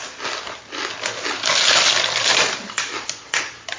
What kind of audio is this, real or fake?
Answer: real